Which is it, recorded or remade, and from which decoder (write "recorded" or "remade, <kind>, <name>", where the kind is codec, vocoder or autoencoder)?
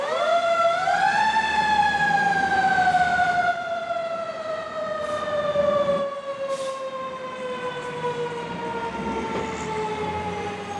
recorded